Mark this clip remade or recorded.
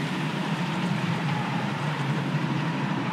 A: remade